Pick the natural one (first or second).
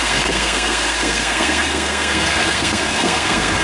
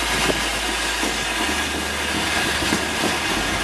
second